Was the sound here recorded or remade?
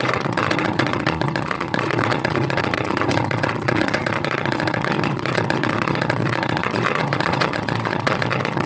remade